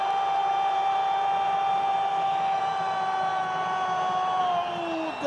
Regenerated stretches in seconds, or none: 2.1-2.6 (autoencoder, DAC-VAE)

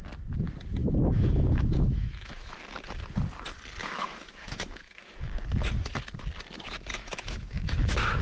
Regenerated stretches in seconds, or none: 0.8-2.5 (autoencoder, DAC-VAE); 3.8-5.4; 6.9-8.2

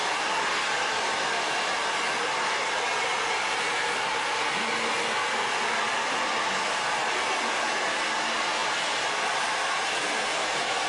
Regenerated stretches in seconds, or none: none

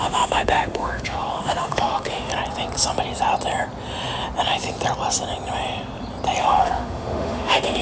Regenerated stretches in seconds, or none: 0.0-2.3 (autoencoder, DAC-VAE); 6.4-7.8